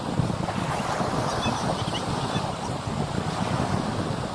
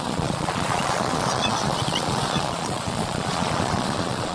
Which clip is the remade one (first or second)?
second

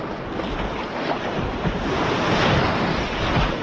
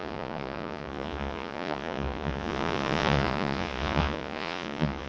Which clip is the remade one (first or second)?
second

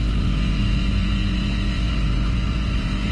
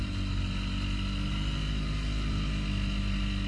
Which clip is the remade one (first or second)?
first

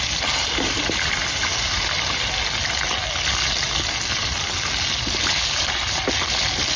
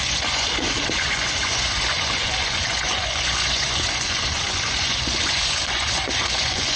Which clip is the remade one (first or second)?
second